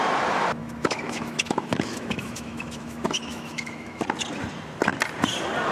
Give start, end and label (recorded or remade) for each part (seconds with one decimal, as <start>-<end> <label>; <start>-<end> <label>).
0.0-0.6 recorded; 0.6-4.0 remade; 4.0-5.7 recorded